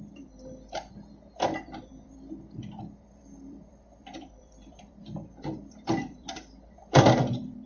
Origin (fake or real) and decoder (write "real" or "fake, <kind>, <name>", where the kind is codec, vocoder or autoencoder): fake, vocoder, BigVGAN v2